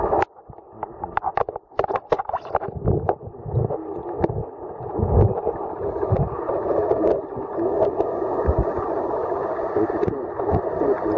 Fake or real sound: real